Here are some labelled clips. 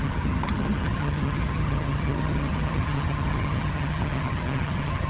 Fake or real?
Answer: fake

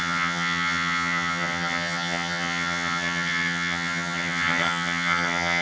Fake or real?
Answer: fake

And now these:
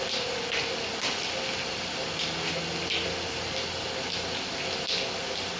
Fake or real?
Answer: real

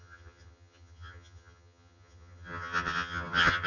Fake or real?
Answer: fake